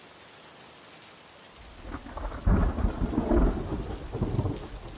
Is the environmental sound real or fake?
real